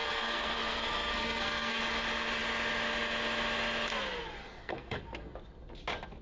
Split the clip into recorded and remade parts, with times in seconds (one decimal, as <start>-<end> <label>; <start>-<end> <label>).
0.0-1.8 remade; 1.8-4.4 recorded; 4.4-5.0 remade; 5.0-6.2 recorded